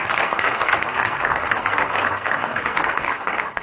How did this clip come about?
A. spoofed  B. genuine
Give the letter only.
A